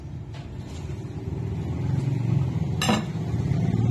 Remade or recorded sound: recorded